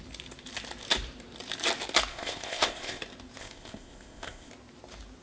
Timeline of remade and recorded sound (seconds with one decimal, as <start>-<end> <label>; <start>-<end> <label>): 0.0-2.1 recorded; 2.1-3.0 remade; 3.0-3.4 recorded; 3.4-4.5 remade; 4.5-5.2 recorded